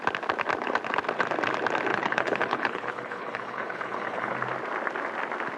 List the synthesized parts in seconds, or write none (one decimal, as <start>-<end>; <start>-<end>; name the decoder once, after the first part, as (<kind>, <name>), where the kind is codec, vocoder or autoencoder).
1.9-4.3 (codec, HILCodec)